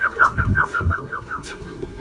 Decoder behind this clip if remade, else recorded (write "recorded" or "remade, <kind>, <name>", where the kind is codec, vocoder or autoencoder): remade, codec, SNAC